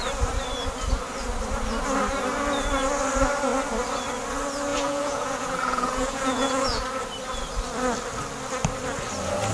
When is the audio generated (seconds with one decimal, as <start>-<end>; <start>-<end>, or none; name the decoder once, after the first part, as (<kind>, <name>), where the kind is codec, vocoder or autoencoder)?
4.7-6.8 (vocoder, Vocos)